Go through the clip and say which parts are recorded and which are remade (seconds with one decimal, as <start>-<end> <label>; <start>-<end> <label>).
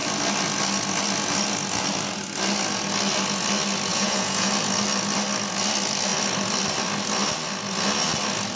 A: 0.0-3.9 recorded; 3.9-4.5 remade; 4.5-8.6 recorded